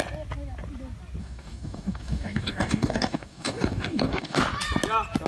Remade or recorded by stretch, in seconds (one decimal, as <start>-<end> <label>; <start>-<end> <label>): 0.0-1.2 recorded; 1.2-4.4 remade; 4.4-5.3 recorded